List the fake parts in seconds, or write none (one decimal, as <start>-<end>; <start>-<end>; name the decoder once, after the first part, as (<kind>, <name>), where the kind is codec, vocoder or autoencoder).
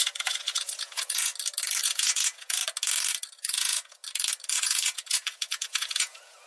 0.0-1.3 (vocoder, Vocos); 1.8-2.6; 3.4-4.0; 4.5-6.5